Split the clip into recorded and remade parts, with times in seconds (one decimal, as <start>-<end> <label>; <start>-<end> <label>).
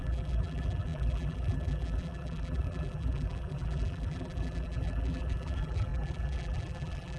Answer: 0.0-7.2 remade